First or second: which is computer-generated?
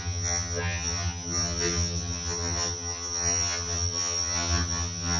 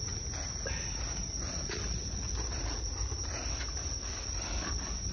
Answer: first